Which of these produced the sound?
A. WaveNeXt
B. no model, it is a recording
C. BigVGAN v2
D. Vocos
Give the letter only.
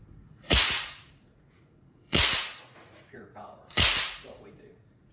D